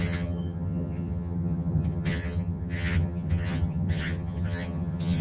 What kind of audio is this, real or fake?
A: fake